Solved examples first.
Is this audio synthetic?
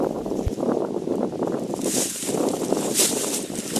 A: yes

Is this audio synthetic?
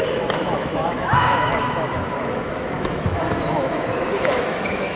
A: yes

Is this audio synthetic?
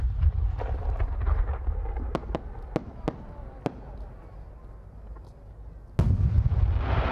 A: no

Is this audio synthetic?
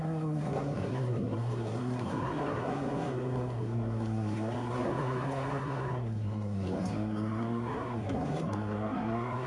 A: yes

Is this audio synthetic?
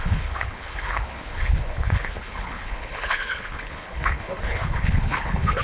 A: yes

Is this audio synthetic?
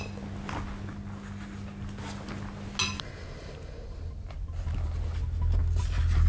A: no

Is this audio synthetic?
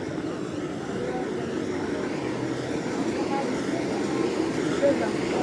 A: no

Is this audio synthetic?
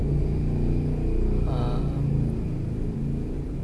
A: no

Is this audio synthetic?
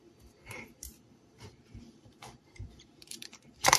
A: yes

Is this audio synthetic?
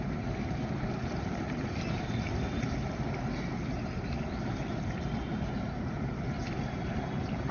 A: yes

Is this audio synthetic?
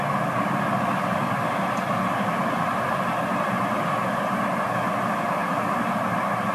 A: no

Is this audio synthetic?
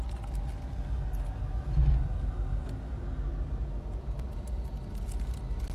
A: no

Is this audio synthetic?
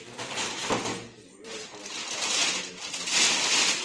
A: no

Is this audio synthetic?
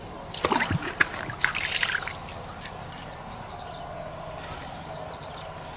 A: no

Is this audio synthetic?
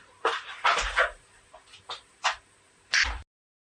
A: no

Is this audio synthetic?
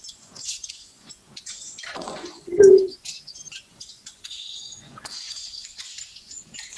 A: yes